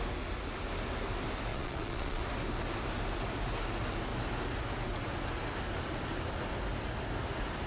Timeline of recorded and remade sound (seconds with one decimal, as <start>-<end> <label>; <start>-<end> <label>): 0.0-1.5 recorded; 1.5-2.2 remade; 2.2-7.7 recorded